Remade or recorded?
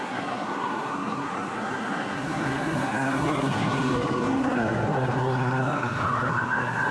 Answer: remade